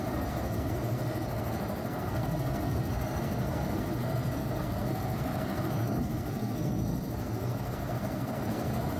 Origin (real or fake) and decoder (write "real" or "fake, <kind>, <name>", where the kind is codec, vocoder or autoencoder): fake, codec, SNAC